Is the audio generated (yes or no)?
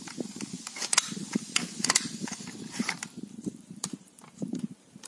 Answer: yes